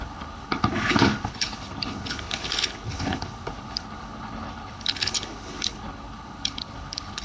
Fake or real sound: fake